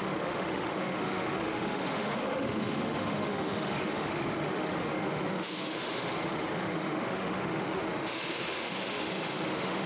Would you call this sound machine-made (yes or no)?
yes